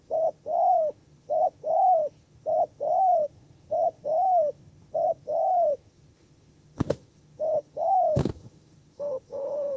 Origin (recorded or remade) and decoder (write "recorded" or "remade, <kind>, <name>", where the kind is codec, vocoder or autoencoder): remade, autoencoder, DAC-VAE